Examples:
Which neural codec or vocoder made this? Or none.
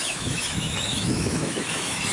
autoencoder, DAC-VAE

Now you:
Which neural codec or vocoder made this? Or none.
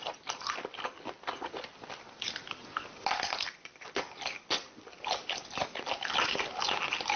none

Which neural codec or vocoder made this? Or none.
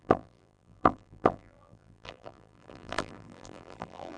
vocoder, BigVGAN v2